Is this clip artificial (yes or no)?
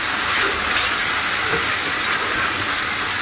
no